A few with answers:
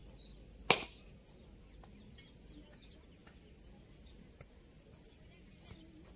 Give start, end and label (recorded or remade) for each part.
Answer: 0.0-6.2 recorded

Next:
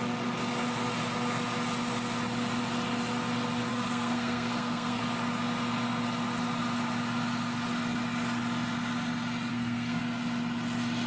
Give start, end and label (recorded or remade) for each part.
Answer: 0.0-3.7 recorded; 3.7-5.0 remade; 5.0-9.5 recorded; 9.5-10.0 remade; 10.0-11.1 recorded

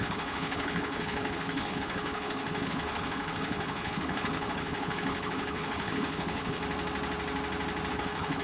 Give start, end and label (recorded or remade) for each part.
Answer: 0.0-6.6 remade; 6.6-7.9 recorded; 7.9-8.4 remade

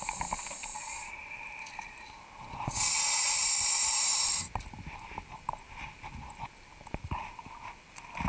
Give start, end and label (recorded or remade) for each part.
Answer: 0.0-8.3 recorded

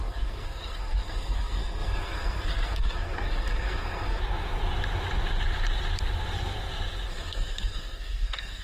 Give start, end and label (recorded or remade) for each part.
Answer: 0.0-4.2 remade; 4.2-7.1 recorded; 7.1-8.6 remade

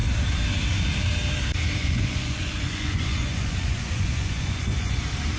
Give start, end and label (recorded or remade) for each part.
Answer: 0.0-1.8 recorded; 1.8-5.0 remade; 5.0-5.4 recorded